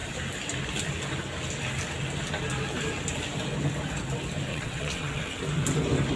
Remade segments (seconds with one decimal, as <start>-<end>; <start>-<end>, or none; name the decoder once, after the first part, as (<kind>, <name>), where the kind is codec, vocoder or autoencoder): 4.5-5.4 (vocoder, WaveNeXt)